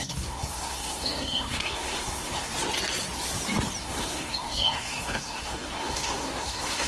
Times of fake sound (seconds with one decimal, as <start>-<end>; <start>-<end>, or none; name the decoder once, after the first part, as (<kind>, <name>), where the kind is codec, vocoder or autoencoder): 0.0-2.5 (codec, SNAC); 3.8-6.9